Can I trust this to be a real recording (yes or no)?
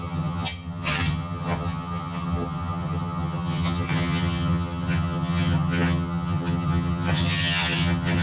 no